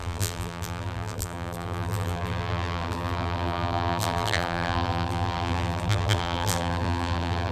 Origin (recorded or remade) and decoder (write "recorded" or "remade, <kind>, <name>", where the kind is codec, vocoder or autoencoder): remade, vocoder, BigVGAN v2